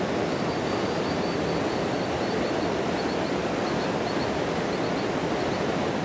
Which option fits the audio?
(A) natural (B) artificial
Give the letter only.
A